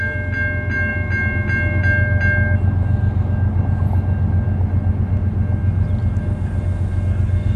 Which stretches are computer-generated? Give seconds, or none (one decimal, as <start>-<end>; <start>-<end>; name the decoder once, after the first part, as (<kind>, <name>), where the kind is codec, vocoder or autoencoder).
none